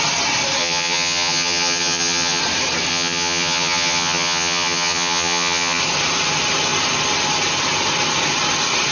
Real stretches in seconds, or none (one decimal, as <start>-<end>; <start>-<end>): 0.0-0.6; 2.4-2.9; 5.8-8.9